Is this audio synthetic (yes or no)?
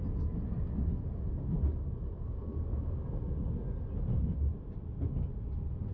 no